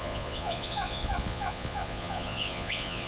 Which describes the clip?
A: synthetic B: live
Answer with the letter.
A